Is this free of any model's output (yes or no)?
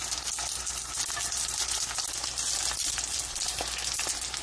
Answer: yes